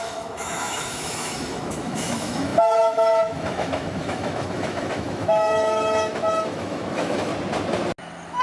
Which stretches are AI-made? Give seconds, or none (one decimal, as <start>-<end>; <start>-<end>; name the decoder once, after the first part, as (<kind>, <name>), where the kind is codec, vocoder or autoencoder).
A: 0.0-7.3 (autoencoder, DAC-VAE)